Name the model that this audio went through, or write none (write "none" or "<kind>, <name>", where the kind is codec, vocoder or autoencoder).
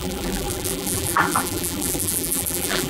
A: vocoder, BigVGAN v2